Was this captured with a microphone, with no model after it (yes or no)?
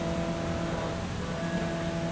yes